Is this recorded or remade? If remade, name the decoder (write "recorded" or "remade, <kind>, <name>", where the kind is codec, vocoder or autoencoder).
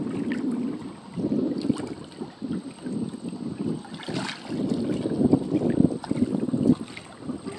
recorded